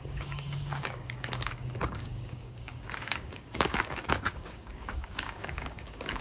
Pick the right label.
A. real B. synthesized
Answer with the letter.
B